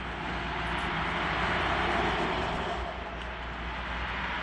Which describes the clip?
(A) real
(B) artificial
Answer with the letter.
A